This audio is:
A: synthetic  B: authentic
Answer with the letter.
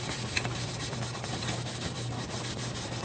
B